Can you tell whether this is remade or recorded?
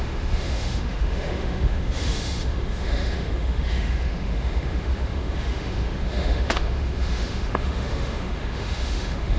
remade